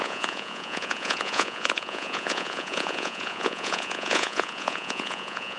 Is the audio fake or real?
fake